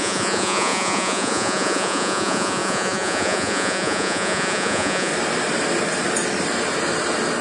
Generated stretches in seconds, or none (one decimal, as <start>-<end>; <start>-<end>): 0.0-5.1